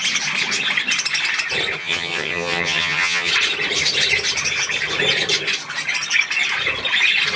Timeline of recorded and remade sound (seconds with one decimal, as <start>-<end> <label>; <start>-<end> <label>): 0.0-1.8 recorded; 1.8-3.3 remade; 3.3-7.4 recorded